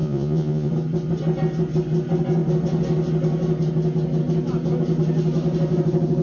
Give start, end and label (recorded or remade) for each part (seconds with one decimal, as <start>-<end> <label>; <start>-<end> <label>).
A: 0.0-0.7 remade; 0.7-6.2 recorded